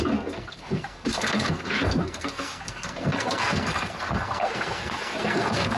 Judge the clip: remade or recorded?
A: remade